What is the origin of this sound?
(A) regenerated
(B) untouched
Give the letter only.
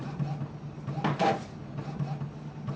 B